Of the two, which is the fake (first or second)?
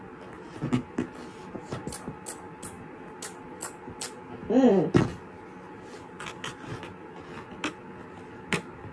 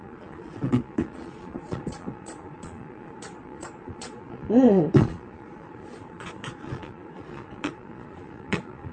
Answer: second